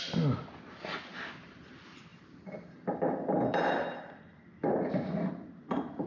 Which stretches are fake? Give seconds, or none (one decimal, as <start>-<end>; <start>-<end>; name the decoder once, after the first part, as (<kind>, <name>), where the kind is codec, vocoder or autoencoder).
none